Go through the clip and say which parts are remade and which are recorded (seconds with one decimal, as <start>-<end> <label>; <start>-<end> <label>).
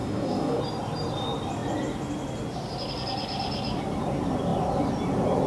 0.0-0.6 remade; 0.6-5.5 recorded